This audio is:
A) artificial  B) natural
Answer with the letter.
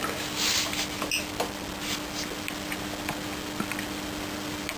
B